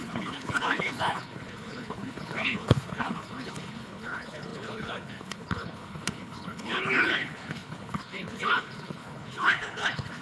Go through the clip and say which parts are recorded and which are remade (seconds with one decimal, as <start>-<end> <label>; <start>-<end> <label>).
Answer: 0.0-10.2 remade